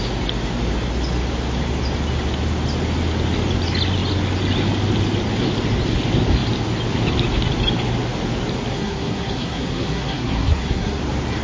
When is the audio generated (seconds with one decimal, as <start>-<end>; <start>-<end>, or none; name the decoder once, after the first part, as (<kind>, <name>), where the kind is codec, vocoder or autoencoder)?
8.7-11.0 (codec, SNAC)